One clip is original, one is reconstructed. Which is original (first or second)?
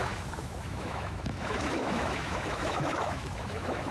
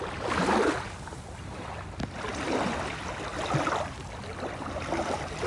second